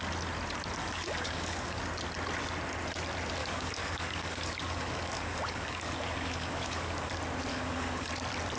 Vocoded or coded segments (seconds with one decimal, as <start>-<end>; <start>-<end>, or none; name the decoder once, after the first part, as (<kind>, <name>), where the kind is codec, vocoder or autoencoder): 0.8-1.8 (codec, DAC); 3.4-7.1; 7.5-8.1